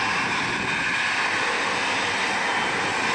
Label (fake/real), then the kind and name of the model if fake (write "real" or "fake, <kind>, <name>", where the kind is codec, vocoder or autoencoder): real